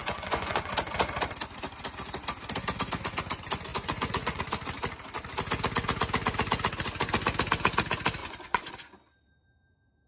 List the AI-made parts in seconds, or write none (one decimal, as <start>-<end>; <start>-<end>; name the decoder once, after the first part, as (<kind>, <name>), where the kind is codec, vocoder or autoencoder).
0.0-0.7 (vocoder, Vocos); 3.7-4.4; 8.2-8.7